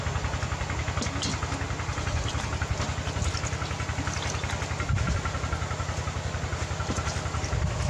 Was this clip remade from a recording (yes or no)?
no